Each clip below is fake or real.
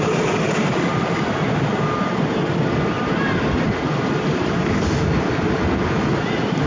real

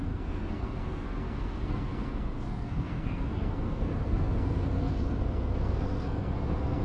fake